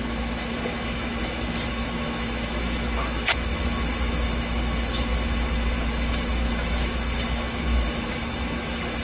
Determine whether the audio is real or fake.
fake